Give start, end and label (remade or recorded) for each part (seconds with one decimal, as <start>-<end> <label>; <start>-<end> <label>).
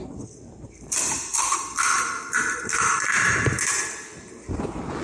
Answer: 0.0-5.0 remade